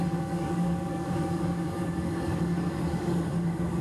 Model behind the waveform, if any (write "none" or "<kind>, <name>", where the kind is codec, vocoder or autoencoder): codec, DAC